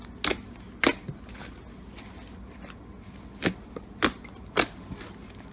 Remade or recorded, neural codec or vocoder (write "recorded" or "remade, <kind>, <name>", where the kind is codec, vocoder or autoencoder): recorded